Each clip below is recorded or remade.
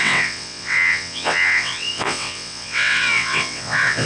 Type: remade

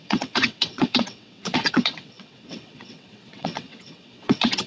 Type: remade